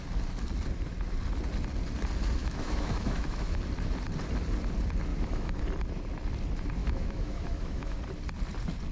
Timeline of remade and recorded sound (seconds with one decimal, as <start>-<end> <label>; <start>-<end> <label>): 0.0-2.4 recorded; 2.4-3.6 remade; 3.6-5.1 recorded; 5.1-5.6 remade; 5.6-6.8 recorded; 6.8-8.0 remade; 8.0-8.9 recorded